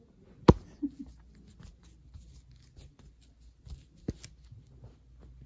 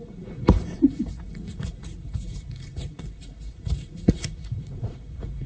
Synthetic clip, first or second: second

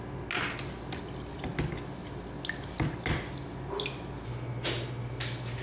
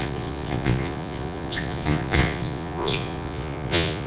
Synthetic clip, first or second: second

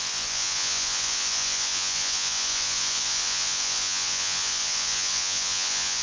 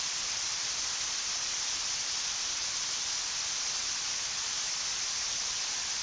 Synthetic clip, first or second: first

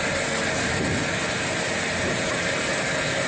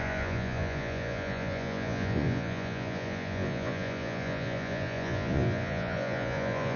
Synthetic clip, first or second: second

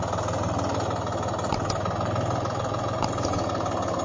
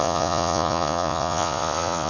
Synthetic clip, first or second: second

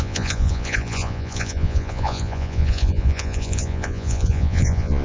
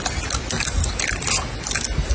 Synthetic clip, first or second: first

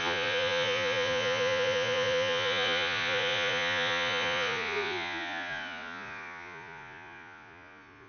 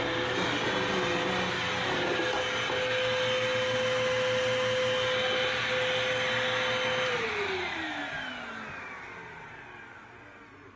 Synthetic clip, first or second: first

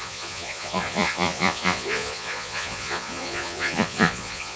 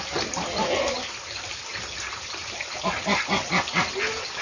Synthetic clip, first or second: first